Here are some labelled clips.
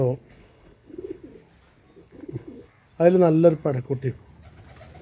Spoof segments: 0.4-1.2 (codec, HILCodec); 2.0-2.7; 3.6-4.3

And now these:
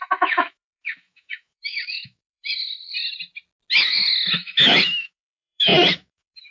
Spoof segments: 0.0-2.5 (autoencoder, DAC-VAE); 3.8-6.5

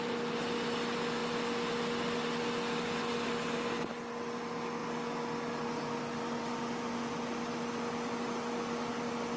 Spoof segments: none

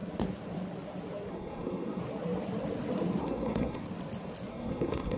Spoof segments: 1.3-2.0 (codec, SNAC); 3.2-3.8; 4.5-5.2

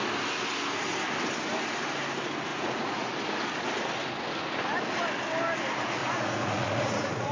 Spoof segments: 2.5-3.1 (vocoder, Vocos); 6.0-7.3

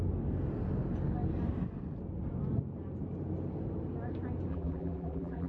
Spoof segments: 4.5-5.5 (vocoder, BigVGAN v2)

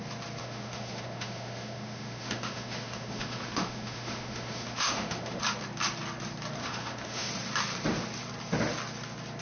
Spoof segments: 0.4-5.4 (autoencoder, DAC-VAE); 6.6-7.3